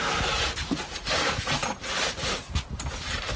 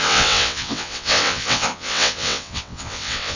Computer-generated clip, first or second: second